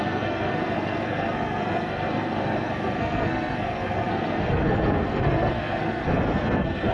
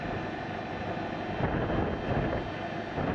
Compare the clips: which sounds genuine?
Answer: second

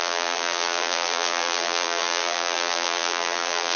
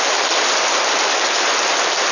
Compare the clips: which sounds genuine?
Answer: second